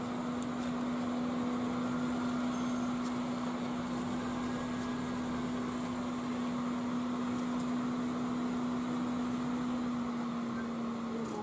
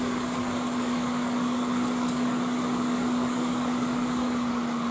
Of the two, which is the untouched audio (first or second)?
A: first